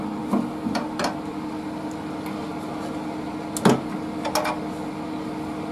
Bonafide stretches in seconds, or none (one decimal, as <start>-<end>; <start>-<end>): 0.0-5.7